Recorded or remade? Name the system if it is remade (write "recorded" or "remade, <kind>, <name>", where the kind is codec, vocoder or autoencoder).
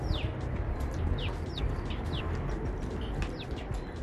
recorded